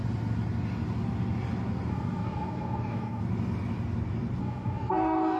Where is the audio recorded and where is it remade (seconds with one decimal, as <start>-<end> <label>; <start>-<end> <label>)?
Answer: 0.0-1.9 recorded; 1.9-3.2 remade; 3.2-4.4 recorded; 4.4-5.4 remade